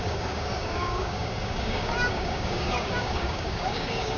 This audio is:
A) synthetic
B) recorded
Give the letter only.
A